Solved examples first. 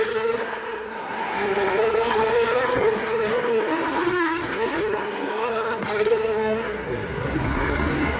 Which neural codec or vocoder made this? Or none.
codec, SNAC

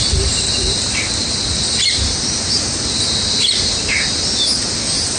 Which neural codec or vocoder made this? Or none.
none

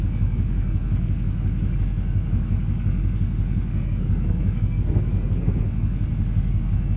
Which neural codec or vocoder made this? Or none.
codec, SNAC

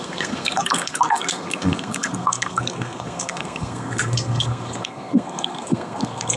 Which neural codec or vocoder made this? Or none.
codec, SNAC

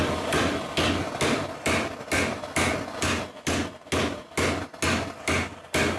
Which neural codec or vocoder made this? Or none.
none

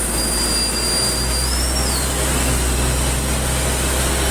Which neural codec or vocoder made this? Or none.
none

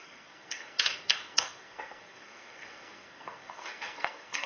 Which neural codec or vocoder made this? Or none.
codec, SNAC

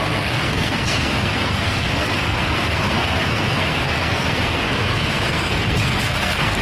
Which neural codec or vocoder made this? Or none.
codec, SNAC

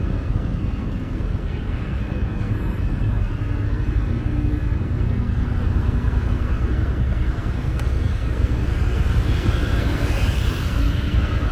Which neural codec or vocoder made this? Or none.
codec, SNAC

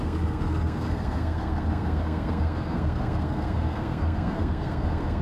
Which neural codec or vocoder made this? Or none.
codec, SNAC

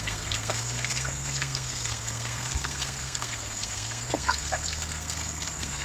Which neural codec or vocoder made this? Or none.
codec, SNAC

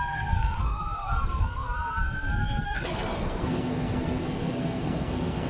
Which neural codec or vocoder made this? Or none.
codec, SNAC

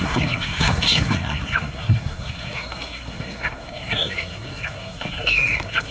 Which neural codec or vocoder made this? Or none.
codec, SNAC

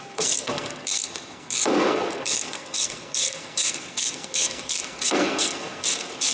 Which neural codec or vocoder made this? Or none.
codec, SNAC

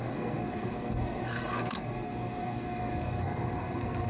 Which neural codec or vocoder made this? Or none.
codec, SNAC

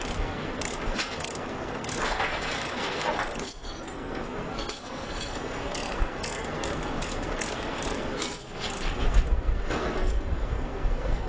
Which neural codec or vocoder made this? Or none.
codec, SNAC